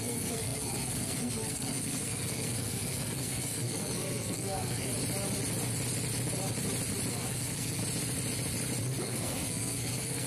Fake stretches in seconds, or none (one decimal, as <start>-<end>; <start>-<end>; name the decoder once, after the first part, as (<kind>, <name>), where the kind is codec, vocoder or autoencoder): 0.0-4.9 (codec, SNAC); 7.1-7.8; 9.0-10.3